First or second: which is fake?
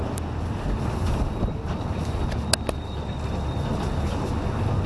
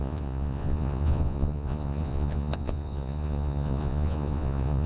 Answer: second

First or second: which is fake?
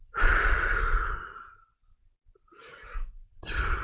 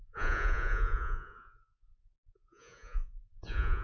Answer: second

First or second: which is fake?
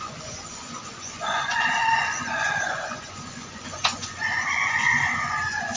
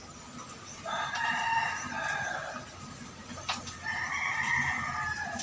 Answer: first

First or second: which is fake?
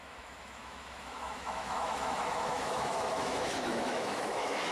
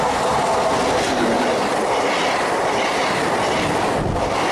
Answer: first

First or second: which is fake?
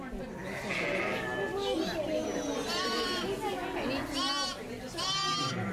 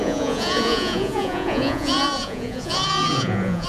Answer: second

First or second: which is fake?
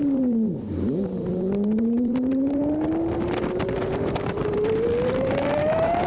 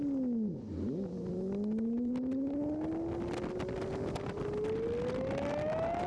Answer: first